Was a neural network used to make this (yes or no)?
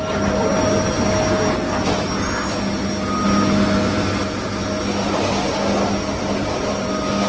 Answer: no